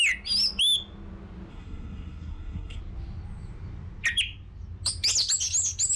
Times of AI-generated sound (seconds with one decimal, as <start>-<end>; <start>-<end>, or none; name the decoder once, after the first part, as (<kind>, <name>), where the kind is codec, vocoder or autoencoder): 1.5-2.8 (codec, SNAC)